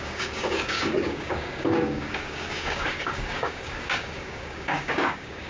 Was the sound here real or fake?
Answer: fake